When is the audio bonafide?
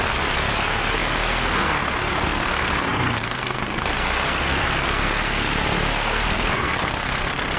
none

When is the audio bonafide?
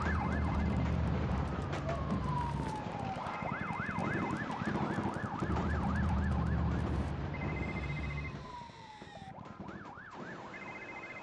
4.0-5.5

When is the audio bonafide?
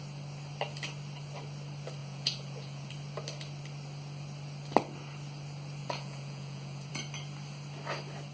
0.0-2.0; 2.9-5.8; 6.9-8.3